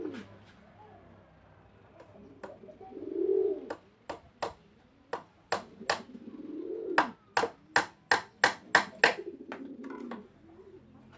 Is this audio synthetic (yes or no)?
no